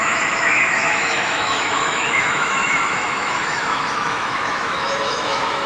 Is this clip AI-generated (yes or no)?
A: yes